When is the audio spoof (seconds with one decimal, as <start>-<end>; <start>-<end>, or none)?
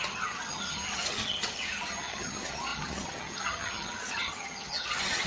0.0-5.3